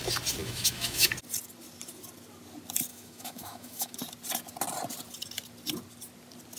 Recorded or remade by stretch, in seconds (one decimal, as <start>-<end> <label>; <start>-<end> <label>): 0.0-0.4 recorded; 0.4-1.1 remade; 1.1-2.9 recorded; 2.9-3.9 remade; 3.9-6.6 recorded